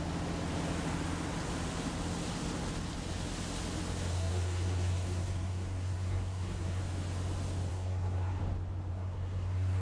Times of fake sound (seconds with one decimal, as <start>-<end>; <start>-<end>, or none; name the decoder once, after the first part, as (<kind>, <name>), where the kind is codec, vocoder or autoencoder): 4.1-6.8 (codec, SNAC); 7.7-8.4; 8.9-9.8